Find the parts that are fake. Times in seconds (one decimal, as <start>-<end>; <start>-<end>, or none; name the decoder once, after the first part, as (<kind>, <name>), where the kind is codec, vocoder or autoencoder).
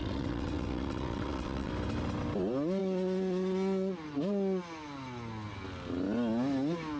0.0-1.7 (vocoder, WaveNeXt)